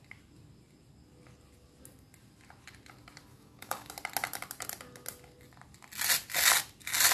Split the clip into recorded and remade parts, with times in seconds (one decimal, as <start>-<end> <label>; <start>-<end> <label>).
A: 0.0-3.3 recorded; 3.3-3.9 remade; 3.9-7.1 recorded